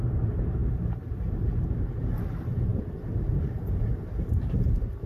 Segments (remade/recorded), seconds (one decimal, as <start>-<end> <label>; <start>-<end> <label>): 0.0-5.1 remade